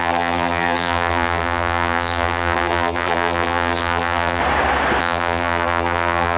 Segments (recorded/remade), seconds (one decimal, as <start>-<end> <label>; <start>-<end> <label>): 0.0-4.4 remade; 4.4-5.0 recorded; 5.0-6.4 remade